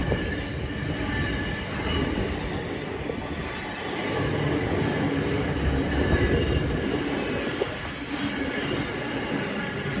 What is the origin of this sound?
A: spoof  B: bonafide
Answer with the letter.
B